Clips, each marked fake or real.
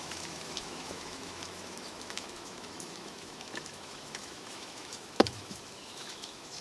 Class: fake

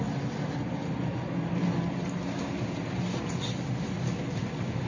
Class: real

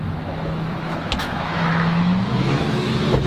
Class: fake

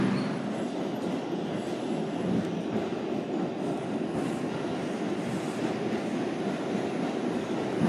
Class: real